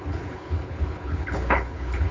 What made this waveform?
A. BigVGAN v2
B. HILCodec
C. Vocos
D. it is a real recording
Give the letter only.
B